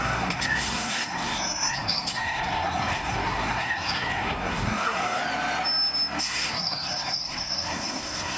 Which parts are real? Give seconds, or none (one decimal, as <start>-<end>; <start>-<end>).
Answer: 5.2-6.2